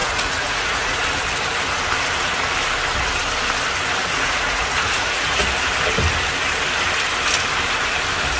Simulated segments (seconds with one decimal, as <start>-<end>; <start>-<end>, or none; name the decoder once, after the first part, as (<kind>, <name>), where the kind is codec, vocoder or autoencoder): 0.0-1.0 (vocoder, Vocos); 4.0-5.4